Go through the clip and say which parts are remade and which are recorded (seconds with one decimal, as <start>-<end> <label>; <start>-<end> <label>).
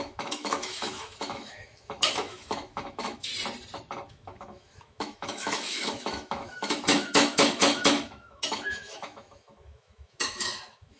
0.0-3.3 remade; 3.3-4.1 recorded; 4.1-11.0 remade